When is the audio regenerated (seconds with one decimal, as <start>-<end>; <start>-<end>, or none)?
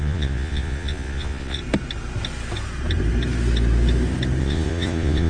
0.0-1.6; 4.4-5.3